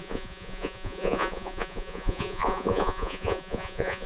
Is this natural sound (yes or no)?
no